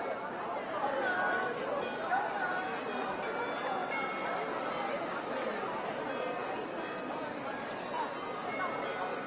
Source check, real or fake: real